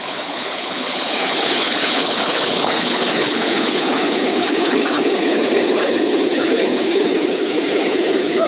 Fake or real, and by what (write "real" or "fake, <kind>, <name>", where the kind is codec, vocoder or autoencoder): fake, codec, HILCodec